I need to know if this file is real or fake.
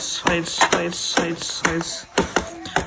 real